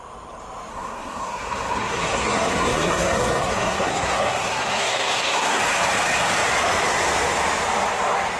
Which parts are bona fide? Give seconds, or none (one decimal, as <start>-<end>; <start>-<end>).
0.0-0.7; 5.6-8.4